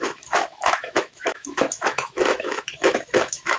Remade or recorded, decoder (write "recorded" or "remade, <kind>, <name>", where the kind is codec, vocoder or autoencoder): remade, autoencoder, DAC-VAE